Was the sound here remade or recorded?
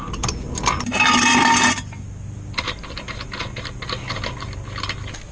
recorded